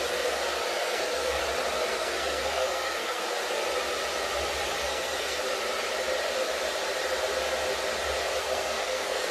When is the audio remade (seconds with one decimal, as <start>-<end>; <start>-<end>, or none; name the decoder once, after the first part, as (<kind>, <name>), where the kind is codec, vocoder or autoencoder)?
0.8-1.4 (codec, SNAC); 1.9-3.2; 4.8-5.4; 8.4-9.3